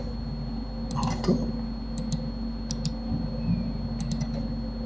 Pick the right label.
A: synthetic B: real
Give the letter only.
B